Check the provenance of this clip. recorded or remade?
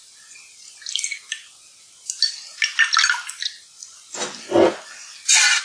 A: recorded